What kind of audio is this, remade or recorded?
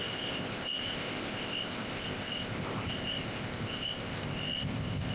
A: remade